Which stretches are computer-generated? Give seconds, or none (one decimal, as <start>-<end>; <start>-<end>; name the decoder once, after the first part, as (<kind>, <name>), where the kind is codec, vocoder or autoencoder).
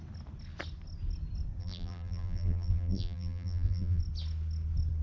1.6-4.0 (vocoder, BigVGAN v2)